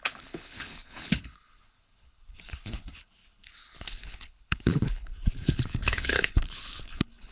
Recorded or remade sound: remade